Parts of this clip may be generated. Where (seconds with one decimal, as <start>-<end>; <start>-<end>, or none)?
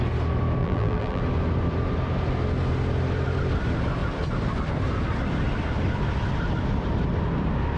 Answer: 0.6-1.2